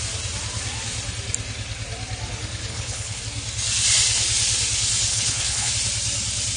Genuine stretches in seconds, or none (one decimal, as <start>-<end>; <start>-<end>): 0.0-2.7; 3.2-5.1; 5.7-6.6